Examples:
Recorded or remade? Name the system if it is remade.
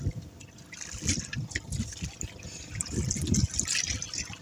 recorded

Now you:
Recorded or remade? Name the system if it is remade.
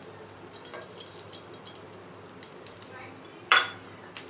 remade, vocoder, BigVGAN v2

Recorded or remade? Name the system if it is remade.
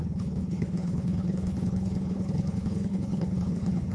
remade, codec, HILCodec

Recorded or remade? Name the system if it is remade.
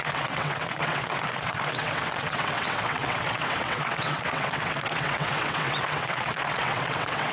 remade, vocoder, WaveNeXt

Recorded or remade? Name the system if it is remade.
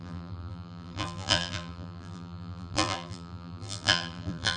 remade, vocoder, BigVGAN v2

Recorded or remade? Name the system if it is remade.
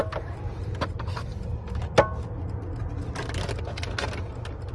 recorded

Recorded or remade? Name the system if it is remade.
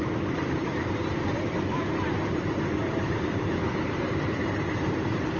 remade, vocoder, BigVGAN v2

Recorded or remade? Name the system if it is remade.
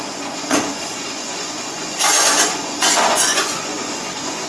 remade, vocoder, Vocos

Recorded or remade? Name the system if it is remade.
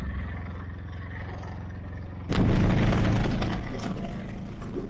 recorded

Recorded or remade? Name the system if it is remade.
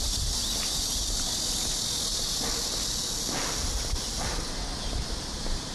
recorded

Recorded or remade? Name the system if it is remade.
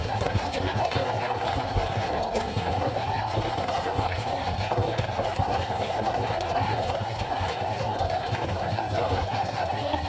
remade, codec, SNAC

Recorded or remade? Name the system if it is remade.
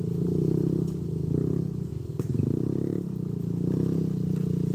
recorded